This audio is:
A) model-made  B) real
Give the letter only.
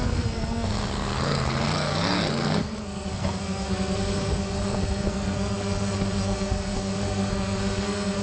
A